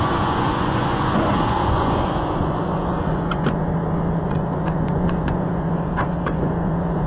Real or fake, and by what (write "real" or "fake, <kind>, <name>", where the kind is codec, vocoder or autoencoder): fake, vocoder, Vocos